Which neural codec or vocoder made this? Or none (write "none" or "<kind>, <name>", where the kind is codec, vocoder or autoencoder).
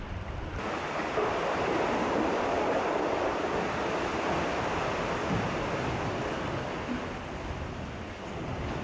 none